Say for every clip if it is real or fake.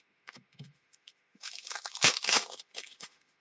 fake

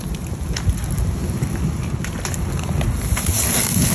real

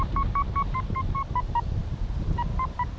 real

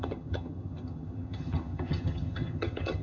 fake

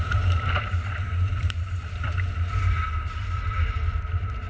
fake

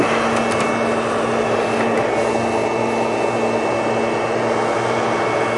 real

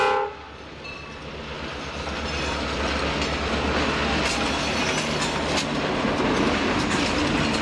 real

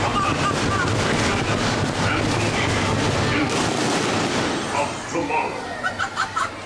real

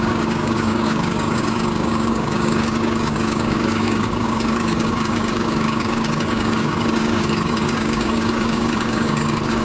fake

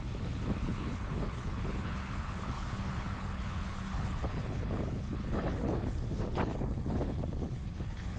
fake